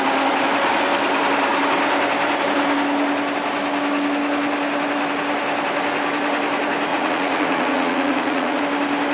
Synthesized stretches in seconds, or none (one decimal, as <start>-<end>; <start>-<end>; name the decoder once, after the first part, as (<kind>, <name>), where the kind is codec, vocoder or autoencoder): 6.9-8.6 (vocoder, Vocos)